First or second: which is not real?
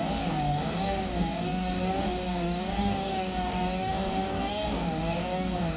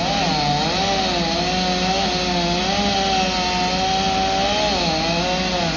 first